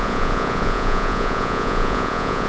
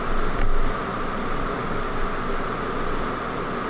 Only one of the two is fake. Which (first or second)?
first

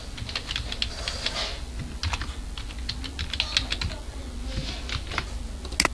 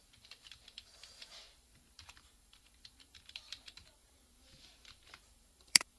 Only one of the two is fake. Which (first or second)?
second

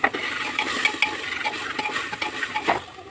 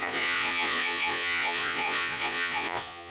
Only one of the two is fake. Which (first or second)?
second